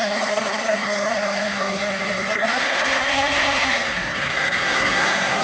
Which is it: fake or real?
fake